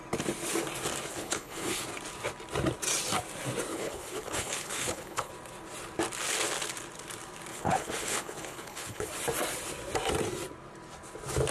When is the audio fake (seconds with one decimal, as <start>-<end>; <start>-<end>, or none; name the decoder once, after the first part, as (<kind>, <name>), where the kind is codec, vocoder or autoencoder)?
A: 1.1-1.8 (codec, HILCodec); 3.7-5.3; 7.5-9.1